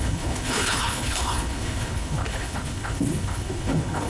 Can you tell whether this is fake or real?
fake